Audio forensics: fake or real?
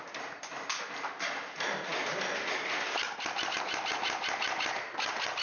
real